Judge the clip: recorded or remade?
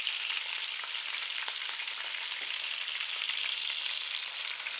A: recorded